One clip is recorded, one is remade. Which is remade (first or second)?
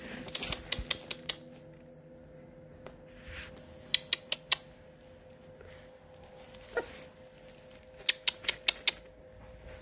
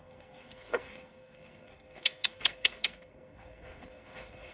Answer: second